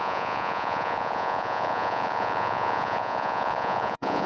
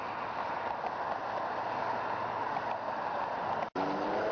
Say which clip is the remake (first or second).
first